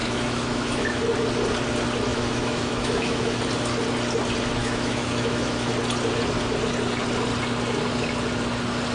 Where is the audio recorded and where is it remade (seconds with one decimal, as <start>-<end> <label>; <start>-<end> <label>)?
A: 0.0-1.0 remade; 1.0-2.1 recorded; 2.1-3.4 remade; 3.4-4.6 recorded; 4.6-5.7 remade; 5.7-8.9 recorded